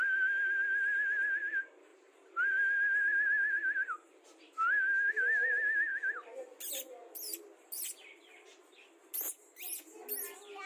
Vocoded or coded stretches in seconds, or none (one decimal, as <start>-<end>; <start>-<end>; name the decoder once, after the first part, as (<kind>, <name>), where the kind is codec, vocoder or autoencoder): 1.9-4.4 (vocoder, BigVGAN v2)